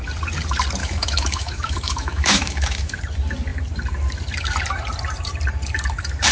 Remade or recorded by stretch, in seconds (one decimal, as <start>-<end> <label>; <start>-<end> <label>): 0.0-0.8 recorded; 0.8-3.0 remade; 3.0-6.3 recorded